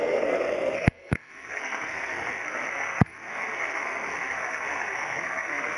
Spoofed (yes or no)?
yes